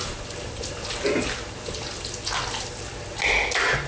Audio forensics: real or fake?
real